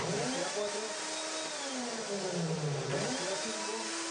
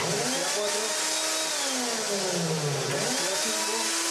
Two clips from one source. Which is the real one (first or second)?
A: second